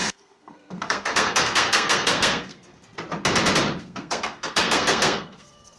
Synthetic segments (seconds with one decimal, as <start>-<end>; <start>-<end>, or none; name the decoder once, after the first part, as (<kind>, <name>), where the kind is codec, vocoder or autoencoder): 0.0-2.9 (codec, SNAC); 3.8-5.8